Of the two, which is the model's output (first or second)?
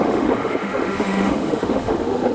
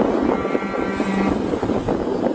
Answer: first